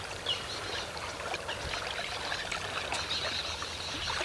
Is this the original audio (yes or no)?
yes